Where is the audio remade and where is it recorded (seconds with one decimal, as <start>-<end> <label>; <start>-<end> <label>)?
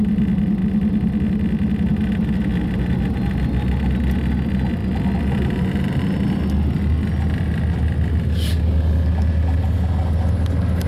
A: 0.0-4.8 recorded; 4.8-6.0 remade; 6.0-10.9 recorded